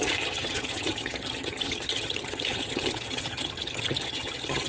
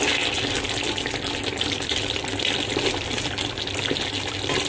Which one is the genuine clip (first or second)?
second